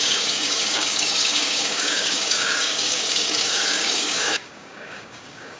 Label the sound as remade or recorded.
remade